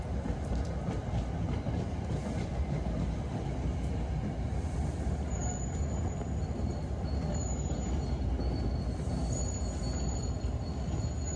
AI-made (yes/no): no